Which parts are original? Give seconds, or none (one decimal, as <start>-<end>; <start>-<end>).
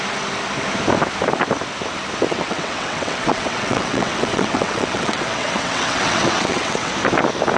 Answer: 0.0-2.3; 6.9-7.6